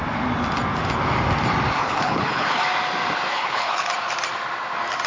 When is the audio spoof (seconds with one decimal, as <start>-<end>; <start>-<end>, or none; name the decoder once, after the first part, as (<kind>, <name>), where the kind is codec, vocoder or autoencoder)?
1.8-2.6 (codec, HILCodec); 3.3-3.9